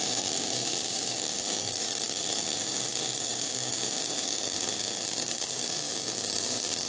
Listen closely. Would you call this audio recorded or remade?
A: remade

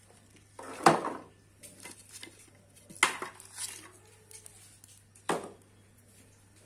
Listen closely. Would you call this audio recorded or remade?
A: recorded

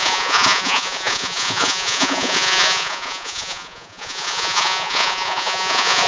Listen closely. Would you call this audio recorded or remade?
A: remade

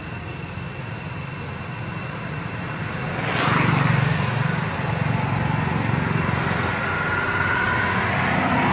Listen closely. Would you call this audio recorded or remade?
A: recorded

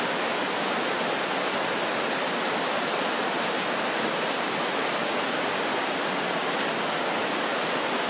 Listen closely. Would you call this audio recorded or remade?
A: recorded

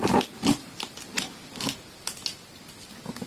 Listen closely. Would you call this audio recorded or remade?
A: recorded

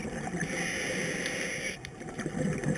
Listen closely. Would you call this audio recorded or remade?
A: recorded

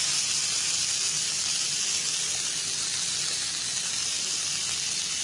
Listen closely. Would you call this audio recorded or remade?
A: recorded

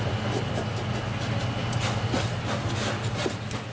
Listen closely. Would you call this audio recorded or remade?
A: recorded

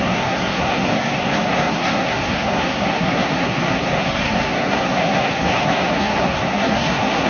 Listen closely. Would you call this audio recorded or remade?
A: remade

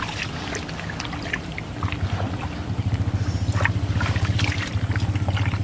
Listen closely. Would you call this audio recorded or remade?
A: recorded